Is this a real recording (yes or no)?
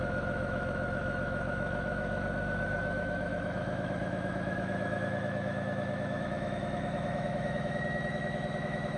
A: no